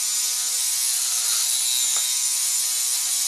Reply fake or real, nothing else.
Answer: real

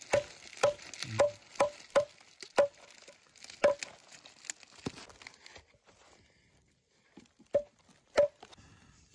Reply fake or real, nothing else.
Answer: real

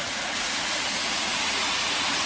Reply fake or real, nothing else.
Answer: fake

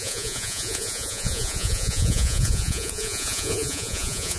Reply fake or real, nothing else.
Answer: fake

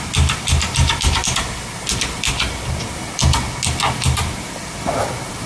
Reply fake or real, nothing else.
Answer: real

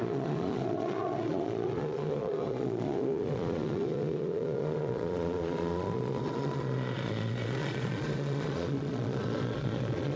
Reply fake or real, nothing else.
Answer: fake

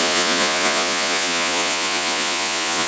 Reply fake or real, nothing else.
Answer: fake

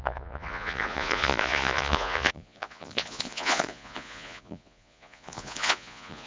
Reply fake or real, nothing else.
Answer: fake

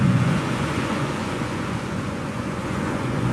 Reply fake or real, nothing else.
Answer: fake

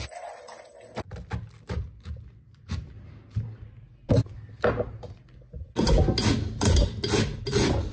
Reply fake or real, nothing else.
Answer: real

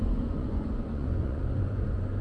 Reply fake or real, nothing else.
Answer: fake